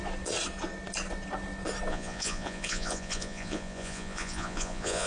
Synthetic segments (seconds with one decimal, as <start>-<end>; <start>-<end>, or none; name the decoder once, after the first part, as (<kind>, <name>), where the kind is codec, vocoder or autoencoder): 1.9-5.1 (vocoder, Vocos)